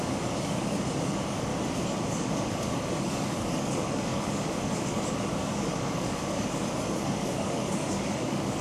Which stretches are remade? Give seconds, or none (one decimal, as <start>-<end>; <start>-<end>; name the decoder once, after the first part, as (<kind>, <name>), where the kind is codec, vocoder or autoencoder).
0.0-1.5 (codec, DAC); 2.1-8.6